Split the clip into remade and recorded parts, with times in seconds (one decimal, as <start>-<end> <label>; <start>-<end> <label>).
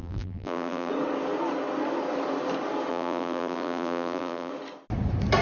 0.0-0.9 remade; 0.9-2.9 recorded; 2.9-4.5 remade; 4.5-5.4 recorded